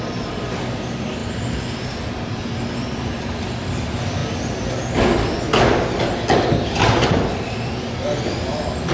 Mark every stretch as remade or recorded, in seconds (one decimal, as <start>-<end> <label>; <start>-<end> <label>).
0.0-8.9 recorded